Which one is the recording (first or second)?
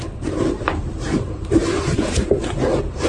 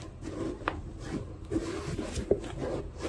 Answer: second